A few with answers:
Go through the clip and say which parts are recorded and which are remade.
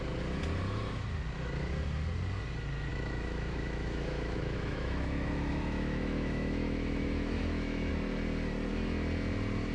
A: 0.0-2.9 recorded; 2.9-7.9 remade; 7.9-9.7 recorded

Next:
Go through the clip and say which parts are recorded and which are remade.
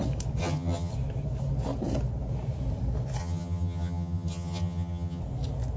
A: 0.0-0.4 recorded; 0.4-0.9 remade; 0.9-3.2 recorded; 3.2-5.2 remade; 5.2-5.8 recorded